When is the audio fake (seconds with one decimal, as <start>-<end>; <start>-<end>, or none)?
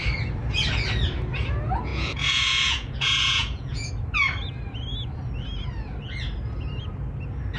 1.9-3.9